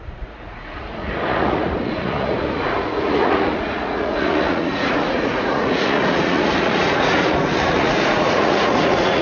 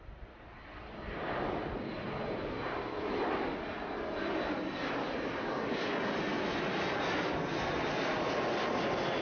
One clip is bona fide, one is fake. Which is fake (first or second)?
first